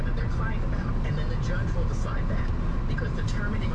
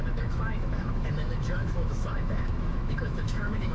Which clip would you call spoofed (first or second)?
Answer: second